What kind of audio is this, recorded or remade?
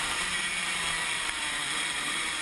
remade